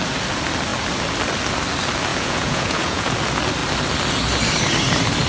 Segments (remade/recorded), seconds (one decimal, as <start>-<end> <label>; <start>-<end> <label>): 0.0-2.1 recorded; 2.1-3.1 remade; 3.1-5.3 recorded